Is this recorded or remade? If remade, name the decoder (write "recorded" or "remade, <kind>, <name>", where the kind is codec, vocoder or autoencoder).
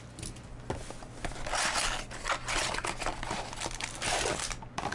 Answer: recorded